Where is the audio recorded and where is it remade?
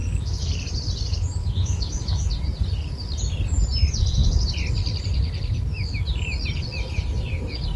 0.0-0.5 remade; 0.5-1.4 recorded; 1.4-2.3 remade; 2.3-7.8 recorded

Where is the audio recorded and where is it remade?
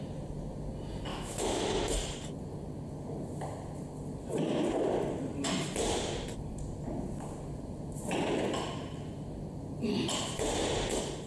0.0-1.1 recorded; 1.1-1.6 remade; 1.6-11.3 recorded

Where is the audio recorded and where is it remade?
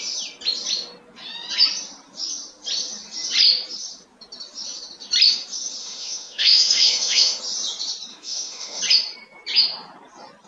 0.0-5.8 recorded; 5.8-7.4 remade; 7.4-8.1 recorded; 8.1-8.8 remade; 8.8-10.5 recorded